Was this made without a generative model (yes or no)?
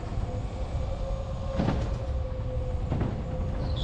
yes